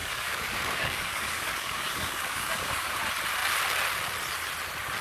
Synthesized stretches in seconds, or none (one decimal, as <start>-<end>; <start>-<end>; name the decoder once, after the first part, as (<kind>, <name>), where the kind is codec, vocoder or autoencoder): 0.0-3.0 (codec, DAC)